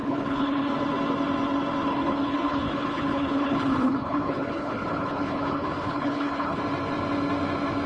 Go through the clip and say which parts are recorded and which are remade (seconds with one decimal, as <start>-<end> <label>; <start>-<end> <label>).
0.0-0.7 remade; 0.7-1.9 recorded; 1.9-6.6 remade; 6.6-7.9 recorded